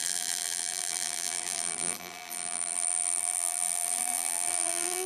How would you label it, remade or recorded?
remade